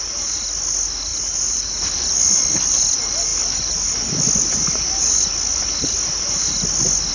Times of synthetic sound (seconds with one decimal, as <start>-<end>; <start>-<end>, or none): 1.1-1.8